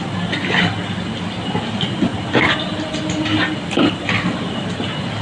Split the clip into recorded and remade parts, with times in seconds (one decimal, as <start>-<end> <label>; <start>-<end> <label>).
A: 0.0-5.2 recorded